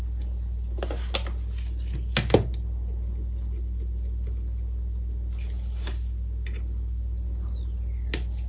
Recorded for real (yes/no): yes